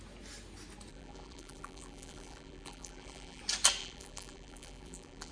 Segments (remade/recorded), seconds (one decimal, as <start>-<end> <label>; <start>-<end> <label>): 0.0-0.9 recorded; 0.9-3.4 remade; 3.4-3.8 recorded; 3.8-5.3 remade

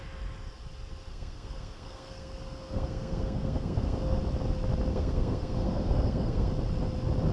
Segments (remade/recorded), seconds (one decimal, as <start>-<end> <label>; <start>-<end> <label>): 0.0-1.1 recorded; 1.1-4.2 remade; 4.2-4.9 recorded; 4.9-6.5 remade; 6.5-7.3 recorded

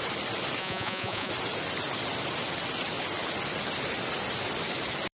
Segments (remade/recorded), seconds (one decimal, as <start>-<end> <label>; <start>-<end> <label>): 0.0-0.6 recorded; 0.6-1.3 remade; 1.3-5.2 recorded

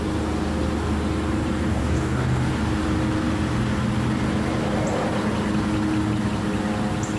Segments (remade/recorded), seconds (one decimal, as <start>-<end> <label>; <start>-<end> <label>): 0.0-1.7 recorded; 1.7-2.5 remade; 2.5-7.2 recorded

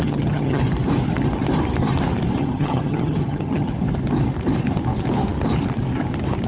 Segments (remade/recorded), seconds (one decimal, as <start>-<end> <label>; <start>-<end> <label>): 0.0-0.6 remade; 0.6-2.4 recorded; 2.4-3.7 remade; 3.7-6.5 recorded